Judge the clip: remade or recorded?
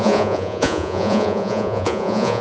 remade